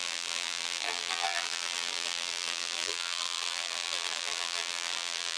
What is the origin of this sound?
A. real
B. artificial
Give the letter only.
B